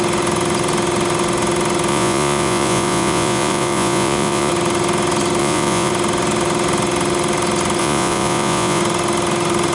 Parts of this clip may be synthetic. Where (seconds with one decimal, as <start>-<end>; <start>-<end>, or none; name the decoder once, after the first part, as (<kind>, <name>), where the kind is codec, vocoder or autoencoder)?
1.9-4.5 (vocoder, Vocos); 5.4-5.9; 7.8-8.8